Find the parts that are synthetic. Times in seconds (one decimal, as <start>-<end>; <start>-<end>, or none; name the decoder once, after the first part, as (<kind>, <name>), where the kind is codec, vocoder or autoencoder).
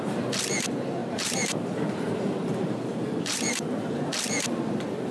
1.0-4.1 (vocoder, BigVGAN v2)